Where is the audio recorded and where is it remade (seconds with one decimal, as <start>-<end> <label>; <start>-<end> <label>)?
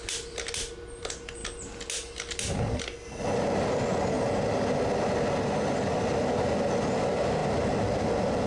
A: 0.0-8.5 recorded